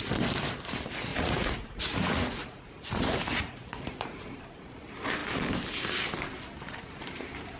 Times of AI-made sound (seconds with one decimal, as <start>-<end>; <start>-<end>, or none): 1.1-4.3